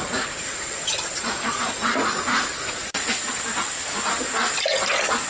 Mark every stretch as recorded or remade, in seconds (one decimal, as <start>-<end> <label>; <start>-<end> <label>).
0.0-3.1 remade; 3.1-5.3 recorded